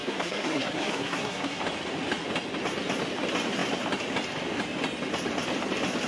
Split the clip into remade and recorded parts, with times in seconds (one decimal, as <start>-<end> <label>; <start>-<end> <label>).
0.0-1.6 remade; 1.6-6.1 recorded